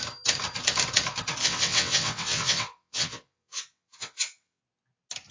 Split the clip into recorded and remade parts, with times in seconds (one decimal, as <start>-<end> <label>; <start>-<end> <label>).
0.0-1.4 recorded; 1.4-4.6 remade; 4.6-5.3 recorded